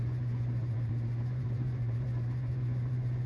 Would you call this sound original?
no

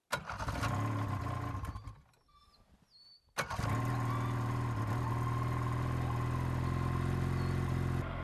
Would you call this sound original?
yes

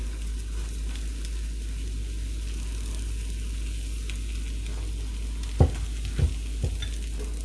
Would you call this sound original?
yes